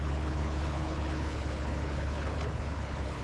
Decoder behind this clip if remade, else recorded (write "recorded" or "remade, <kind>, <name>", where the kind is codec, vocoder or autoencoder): remade, codec, HILCodec